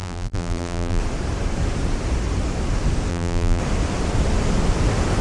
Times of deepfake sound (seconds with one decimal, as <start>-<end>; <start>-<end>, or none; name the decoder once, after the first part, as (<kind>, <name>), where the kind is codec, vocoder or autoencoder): 0.0-1.0 (vocoder, BigVGAN v2); 3.1-3.6